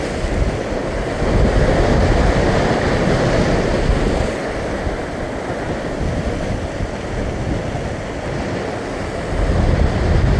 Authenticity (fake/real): real